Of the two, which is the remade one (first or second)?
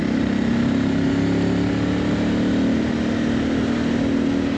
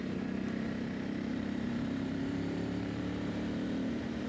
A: second